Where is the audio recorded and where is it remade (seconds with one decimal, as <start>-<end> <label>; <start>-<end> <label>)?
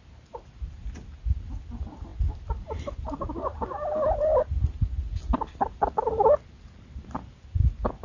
0.0-8.0 recorded